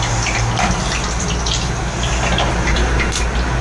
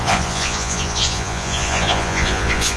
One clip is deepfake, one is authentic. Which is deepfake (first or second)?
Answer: second